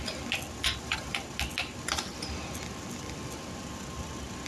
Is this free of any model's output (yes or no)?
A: yes